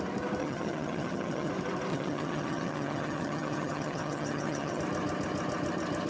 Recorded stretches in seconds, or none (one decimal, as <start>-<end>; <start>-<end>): 0.0-0.4; 1.5-1.9; 4.8-6.1